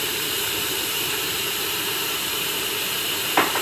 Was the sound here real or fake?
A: fake